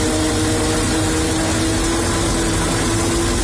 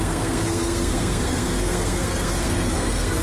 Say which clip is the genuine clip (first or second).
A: first